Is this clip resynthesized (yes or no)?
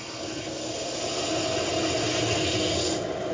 no